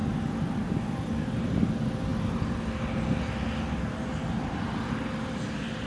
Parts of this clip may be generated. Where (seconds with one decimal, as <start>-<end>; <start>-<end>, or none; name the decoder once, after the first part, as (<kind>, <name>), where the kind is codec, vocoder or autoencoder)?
0.0-1.4 (vocoder, BigVGAN v2)